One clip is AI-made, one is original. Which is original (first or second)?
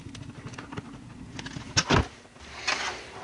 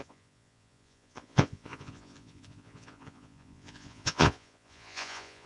first